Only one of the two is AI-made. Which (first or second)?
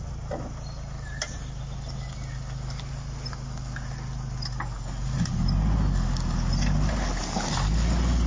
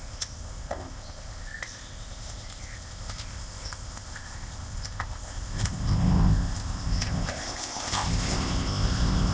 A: second